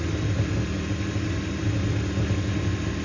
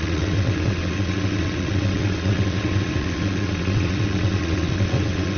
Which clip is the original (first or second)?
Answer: first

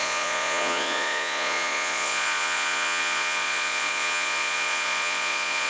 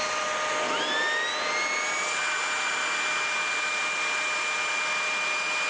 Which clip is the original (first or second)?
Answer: second